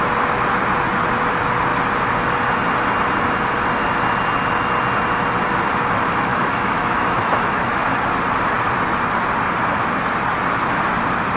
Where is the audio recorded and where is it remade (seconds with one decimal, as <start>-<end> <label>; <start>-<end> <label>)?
0.0-6.3 recorded; 6.3-7.9 remade; 7.9-11.4 recorded